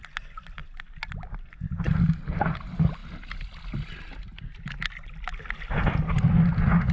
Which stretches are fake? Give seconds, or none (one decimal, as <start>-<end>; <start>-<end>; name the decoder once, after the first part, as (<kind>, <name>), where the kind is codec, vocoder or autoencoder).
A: none